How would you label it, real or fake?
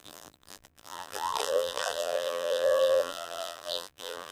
fake